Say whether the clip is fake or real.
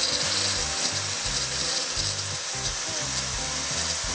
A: real